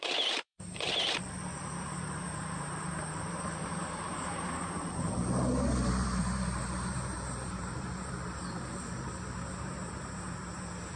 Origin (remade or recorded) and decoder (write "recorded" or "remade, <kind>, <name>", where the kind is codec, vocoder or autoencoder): remade, vocoder, BigVGAN v2